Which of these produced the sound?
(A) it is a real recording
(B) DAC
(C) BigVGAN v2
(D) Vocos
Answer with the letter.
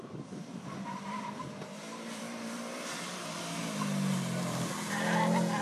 C